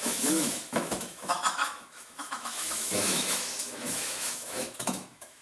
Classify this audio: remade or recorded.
remade